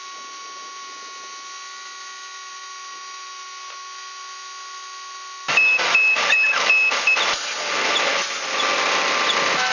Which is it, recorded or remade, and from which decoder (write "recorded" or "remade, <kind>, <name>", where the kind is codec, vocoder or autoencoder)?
recorded